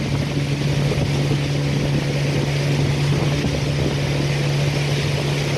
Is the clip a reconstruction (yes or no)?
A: no